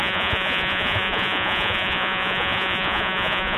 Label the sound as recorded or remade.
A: remade